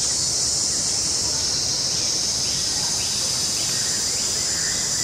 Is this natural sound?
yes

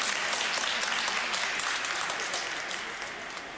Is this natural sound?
yes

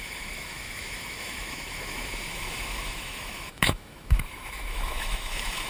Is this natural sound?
no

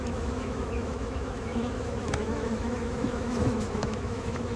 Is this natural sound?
no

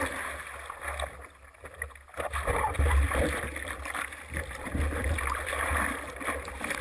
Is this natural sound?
yes